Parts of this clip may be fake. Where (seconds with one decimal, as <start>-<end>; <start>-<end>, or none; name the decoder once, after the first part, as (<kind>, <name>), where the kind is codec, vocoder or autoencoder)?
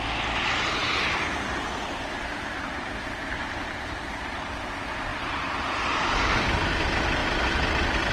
0.8-4.6 (vocoder, BigVGAN v2); 5.1-6.2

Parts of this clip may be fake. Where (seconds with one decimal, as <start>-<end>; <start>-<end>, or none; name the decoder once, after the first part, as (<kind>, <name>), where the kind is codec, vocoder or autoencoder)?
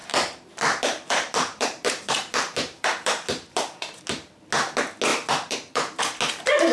0.0-4.0 (vocoder, BigVGAN v2); 5.1-6.0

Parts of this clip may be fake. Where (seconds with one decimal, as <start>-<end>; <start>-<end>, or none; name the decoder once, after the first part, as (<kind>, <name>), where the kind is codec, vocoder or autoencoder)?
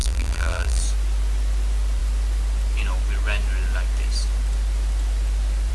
0.0-0.8 (vocoder, BigVGAN v2)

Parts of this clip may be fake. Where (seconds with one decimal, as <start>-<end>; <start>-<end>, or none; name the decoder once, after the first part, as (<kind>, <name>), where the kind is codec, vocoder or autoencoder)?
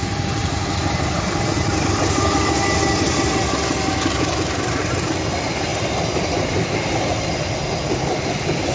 0.0-0.8 (vocoder, BigVGAN v2); 5.1-5.7